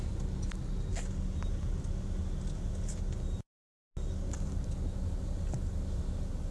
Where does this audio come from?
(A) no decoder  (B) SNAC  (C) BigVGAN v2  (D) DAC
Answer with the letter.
A